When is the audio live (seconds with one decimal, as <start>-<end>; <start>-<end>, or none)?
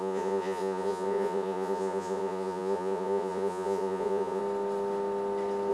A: 4.4-5.7